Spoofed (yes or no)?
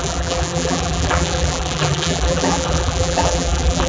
yes